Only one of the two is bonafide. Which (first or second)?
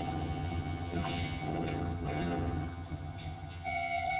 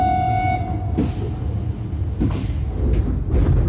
second